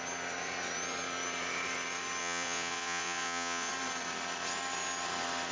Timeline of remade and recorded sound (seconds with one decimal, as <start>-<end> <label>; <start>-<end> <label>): 0.0-2.2 recorded; 2.2-3.7 remade; 3.7-5.5 recorded